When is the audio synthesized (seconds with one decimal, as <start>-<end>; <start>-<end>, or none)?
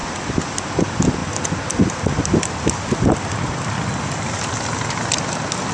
1.2-3.0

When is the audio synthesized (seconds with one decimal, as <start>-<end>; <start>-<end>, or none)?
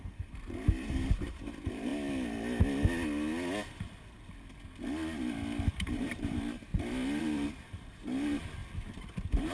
0.0-1.9; 5.7-6.7; 7.2-8.6; 9.1-9.5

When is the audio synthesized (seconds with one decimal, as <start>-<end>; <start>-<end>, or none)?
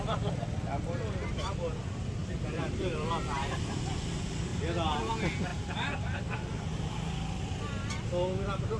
2.2-3.8; 5.5-6.2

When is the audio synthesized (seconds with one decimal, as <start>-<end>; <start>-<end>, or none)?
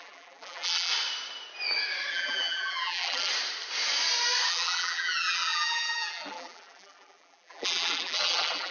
0.0-0.9; 2.1-3.3; 4.5-8.7